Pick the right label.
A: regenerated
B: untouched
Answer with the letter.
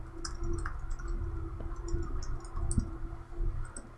B